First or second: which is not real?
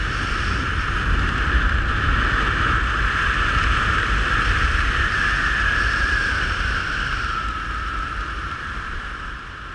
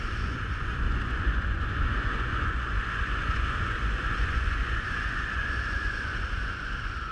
second